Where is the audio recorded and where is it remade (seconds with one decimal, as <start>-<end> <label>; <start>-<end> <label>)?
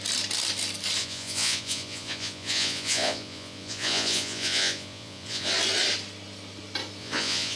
0.0-1.0 recorded; 1.0-5.5 remade; 5.5-7.0 recorded; 7.0-7.6 remade